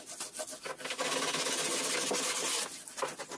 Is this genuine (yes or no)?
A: yes